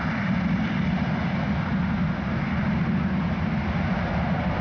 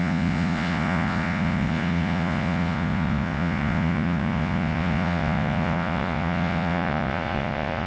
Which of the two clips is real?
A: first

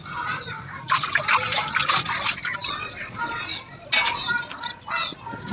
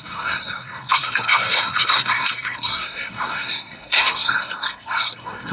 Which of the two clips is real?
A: first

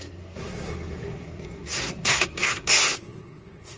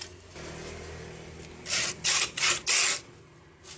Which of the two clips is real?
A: second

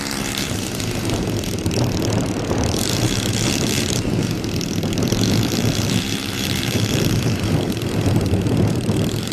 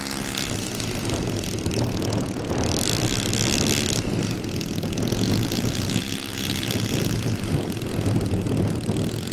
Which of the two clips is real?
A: second